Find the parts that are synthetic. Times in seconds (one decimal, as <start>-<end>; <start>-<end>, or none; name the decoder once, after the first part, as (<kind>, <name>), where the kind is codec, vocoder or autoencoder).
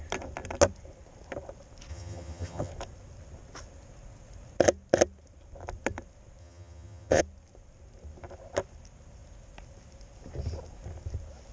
1.9-2.7 (vocoder, HiFi-GAN); 6.4-7.2